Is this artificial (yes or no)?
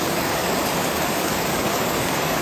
yes